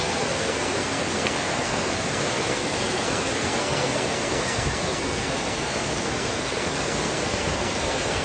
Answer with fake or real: fake